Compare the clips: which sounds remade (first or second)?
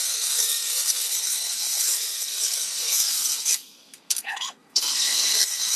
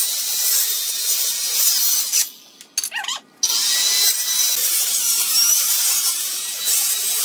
first